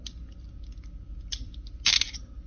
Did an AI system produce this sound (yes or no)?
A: no